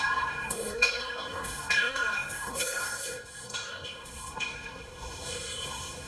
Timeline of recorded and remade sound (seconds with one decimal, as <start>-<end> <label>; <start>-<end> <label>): 0.0-6.1 remade